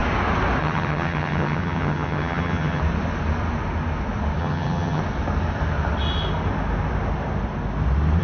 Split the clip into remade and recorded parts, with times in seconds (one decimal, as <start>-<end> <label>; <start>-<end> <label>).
0.0-0.6 recorded; 0.6-2.8 remade; 2.8-4.4 recorded; 4.4-5.0 remade; 5.0-8.2 recorded